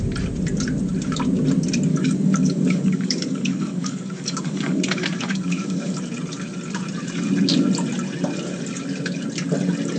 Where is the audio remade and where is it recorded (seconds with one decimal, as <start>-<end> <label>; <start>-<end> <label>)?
0.0-1.9 recorded; 1.9-6.0 remade; 6.0-10.0 recorded